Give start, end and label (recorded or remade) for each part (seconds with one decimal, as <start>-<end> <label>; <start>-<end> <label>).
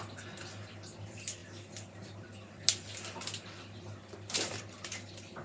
0.0-5.4 recorded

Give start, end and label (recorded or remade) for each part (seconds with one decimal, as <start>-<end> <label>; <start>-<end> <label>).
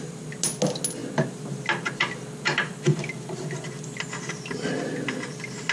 0.0-5.7 recorded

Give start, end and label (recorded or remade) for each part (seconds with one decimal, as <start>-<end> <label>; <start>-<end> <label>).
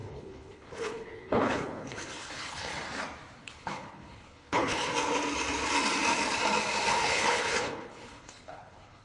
0.0-2.7 remade; 2.7-3.4 recorded; 3.4-4.9 remade; 4.9-6.9 recorded; 6.9-9.0 remade